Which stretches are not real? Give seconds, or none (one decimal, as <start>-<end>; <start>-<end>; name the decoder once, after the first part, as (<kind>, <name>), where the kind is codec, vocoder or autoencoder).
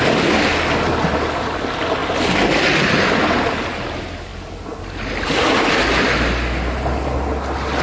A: none